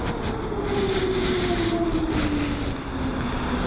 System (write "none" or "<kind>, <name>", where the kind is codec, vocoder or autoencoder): none